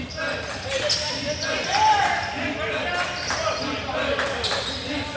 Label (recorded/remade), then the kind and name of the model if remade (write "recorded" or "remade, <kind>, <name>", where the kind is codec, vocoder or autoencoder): recorded